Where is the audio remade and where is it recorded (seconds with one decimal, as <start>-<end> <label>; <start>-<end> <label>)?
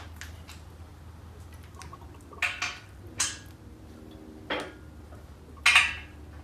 0.0-6.4 recorded